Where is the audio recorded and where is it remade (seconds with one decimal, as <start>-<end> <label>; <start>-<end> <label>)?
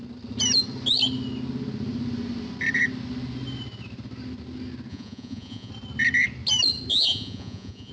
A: 0.0-4.9 recorded; 4.9-5.7 remade; 5.7-6.9 recorded; 6.9-7.9 remade